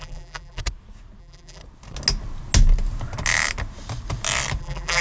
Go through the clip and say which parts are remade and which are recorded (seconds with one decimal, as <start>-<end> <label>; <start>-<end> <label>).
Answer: 0.0-0.6 remade; 0.6-1.2 recorded; 1.2-1.6 remade; 1.6-4.6 recorded; 4.6-5.0 remade